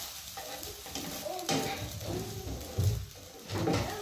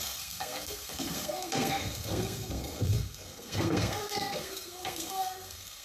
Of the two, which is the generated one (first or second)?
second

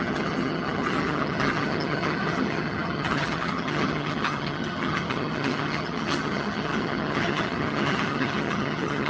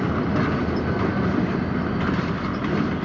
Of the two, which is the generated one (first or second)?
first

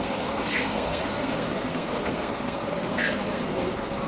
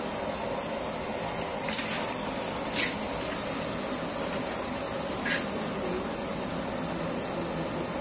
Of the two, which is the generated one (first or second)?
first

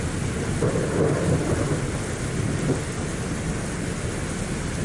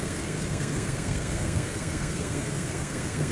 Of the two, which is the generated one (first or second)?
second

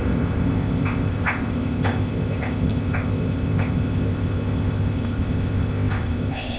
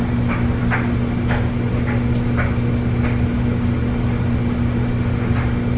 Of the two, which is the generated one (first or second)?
first